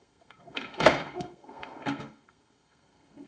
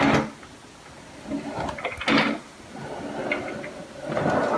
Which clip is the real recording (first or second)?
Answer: second